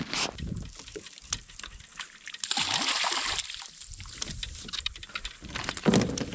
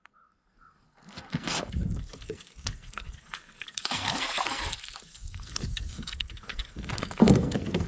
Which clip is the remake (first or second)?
second